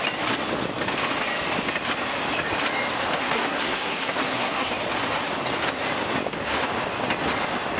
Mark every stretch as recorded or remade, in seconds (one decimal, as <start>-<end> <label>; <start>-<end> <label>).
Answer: 0.0-3.2 recorded; 3.2-4.7 remade; 4.7-7.8 recorded